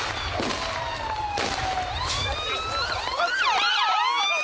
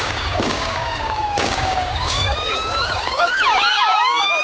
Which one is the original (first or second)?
first